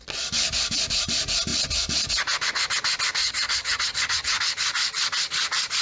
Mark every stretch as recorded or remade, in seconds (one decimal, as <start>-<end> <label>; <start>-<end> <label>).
0.0-3.2 recorded; 3.2-4.4 remade; 4.4-5.8 recorded